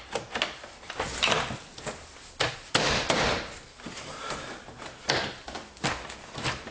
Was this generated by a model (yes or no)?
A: no